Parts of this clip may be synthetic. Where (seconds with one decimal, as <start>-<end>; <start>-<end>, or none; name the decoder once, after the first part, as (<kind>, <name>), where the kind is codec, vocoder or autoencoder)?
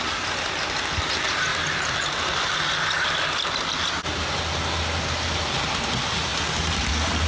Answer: none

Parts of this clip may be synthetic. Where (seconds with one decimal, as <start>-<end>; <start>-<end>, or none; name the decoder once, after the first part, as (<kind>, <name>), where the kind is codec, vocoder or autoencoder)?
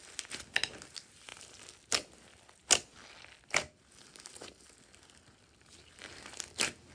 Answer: none